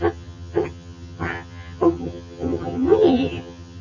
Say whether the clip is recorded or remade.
remade